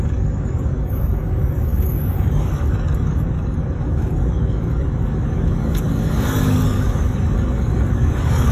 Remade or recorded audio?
remade